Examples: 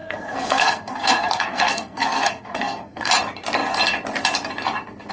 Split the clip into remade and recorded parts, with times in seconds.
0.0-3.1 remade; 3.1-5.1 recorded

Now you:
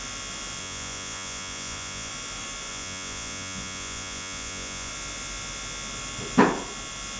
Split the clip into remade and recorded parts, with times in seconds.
0.0-0.6 recorded; 0.6-2.1 remade; 2.1-2.7 recorded; 2.7-4.9 remade; 4.9-7.2 recorded

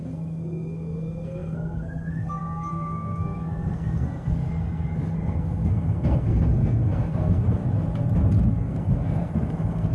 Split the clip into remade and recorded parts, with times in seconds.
0.0-7.6 remade; 7.6-8.5 recorded; 8.5-9.9 remade

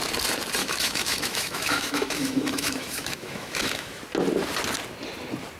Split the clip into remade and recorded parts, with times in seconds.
0.0-0.6 recorded; 0.6-4.0 remade; 4.0-5.6 recorded

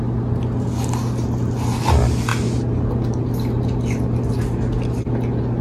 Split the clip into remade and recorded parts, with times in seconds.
0.0-5.6 recorded

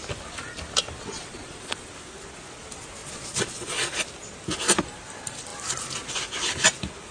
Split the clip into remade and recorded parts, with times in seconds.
0.0-1.1 recorded; 1.1-1.9 remade; 1.9-3.0 recorded; 3.0-4.0 remade; 4.0-7.1 recorded